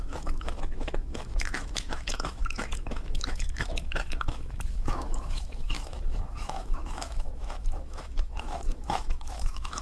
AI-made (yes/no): yes